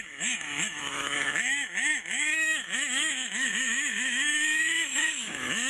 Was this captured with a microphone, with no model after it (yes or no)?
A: no